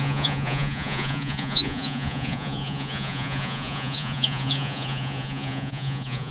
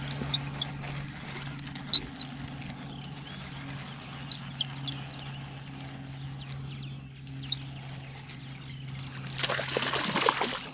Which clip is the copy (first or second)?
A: first